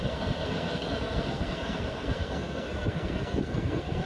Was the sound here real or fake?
fake